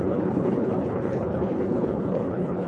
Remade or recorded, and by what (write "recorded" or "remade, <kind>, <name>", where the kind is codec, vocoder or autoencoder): remade, codec, HILCodec